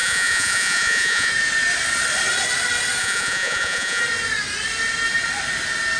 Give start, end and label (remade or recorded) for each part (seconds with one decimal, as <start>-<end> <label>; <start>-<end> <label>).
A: 0.0-1.3 remade; 1.3-3.0 recorded; 3.0-4.0 remade; 4.0-6.0 recorded